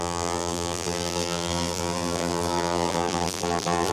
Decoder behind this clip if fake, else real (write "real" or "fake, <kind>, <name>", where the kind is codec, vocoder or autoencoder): fake, vocoder, BigVGAN v2